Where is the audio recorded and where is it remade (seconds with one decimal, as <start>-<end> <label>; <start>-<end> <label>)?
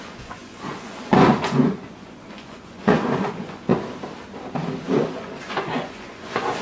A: 0.0-3.7 remade; 3.7-4.9 recorded; 4.9-6.6 remade